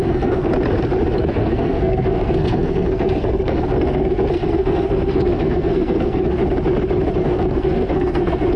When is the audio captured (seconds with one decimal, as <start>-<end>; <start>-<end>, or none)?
0.5-1.2; 6.4-7.2